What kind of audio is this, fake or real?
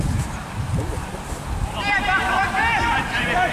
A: fake